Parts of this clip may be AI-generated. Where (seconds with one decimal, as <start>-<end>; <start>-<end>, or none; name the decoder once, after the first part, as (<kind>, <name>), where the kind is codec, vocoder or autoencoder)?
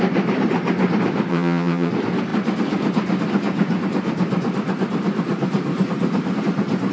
1.3-1.9 (vocoder, HiFi-GAN)